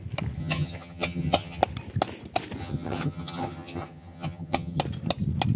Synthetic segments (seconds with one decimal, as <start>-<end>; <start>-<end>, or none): 0.4-1.6; 2.6-4.8